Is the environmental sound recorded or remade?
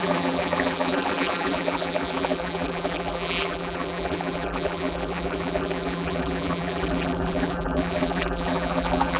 remade